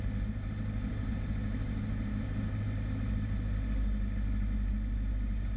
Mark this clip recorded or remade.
recorded